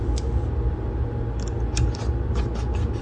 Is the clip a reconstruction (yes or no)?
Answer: no